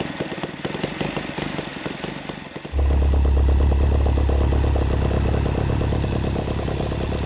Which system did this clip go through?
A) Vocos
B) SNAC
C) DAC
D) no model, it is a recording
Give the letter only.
D